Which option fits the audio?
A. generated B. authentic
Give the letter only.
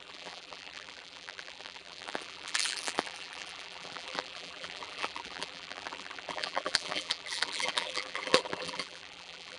A